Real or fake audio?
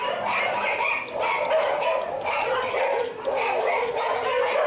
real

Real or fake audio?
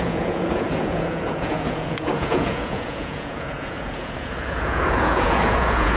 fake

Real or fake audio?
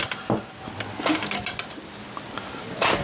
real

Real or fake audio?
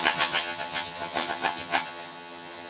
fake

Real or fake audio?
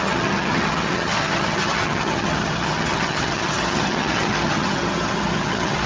fake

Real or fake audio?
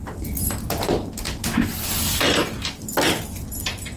real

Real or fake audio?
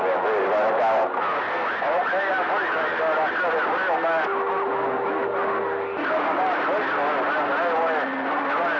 real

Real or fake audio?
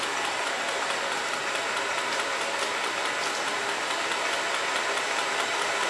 real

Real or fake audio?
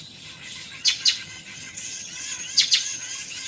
fake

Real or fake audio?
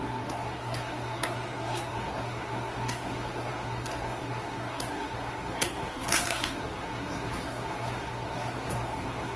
fake